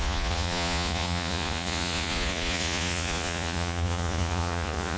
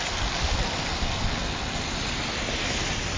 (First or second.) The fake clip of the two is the first